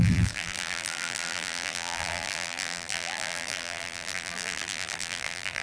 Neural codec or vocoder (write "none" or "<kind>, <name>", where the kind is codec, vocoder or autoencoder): vocoder, BigVGAN v2